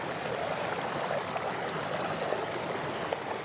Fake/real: real